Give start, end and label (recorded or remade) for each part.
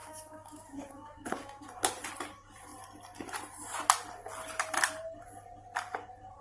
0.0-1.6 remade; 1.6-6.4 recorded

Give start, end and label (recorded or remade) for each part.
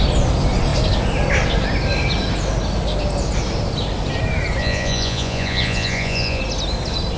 0.0-4.6 recorded; 4.6-6.4 remade; 6.4-7.2 recorded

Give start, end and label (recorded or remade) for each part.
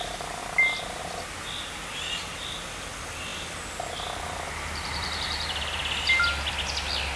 0.0-7.2 recorded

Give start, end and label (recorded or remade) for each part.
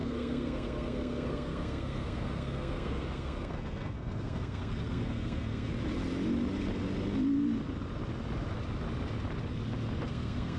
0.0-5.7 remade; 5.7-10.1 recorded; 10.1-10.6 remade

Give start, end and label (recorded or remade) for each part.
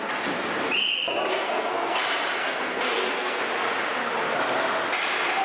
0.0-1.3 recorded; 1.3-2.0 remade; 2.0-2.4 recorded; 2.4-3.4 remade; 3.4-5.4 recorded